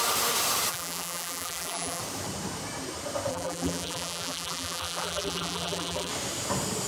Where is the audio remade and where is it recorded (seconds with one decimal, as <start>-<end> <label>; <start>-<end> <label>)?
0.0-0.7 recorded; 0.7-2.0 remade; 2.0-3.3 recorded; 3.3-6.1 remade; 6.1-6.9 recorded